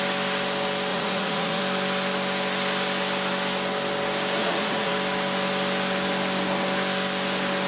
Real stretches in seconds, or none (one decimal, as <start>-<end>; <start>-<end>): 0.0-0.9; 1.6-4.4; 4.9-7.7